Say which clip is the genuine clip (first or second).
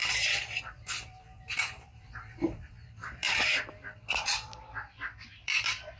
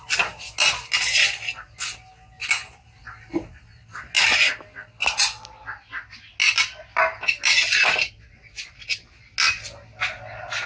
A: second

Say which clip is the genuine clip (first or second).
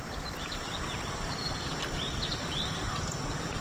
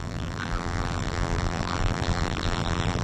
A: first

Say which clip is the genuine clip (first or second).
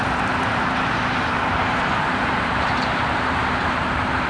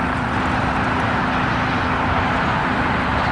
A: second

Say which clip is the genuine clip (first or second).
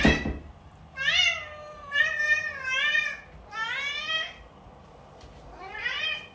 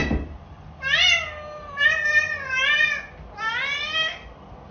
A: second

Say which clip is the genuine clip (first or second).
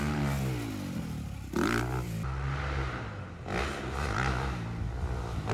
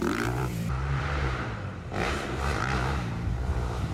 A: first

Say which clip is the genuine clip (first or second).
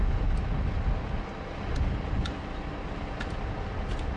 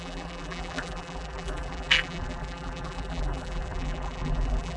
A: first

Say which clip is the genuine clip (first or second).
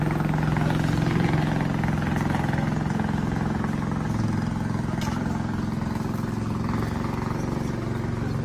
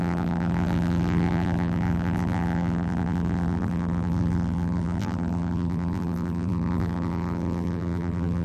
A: first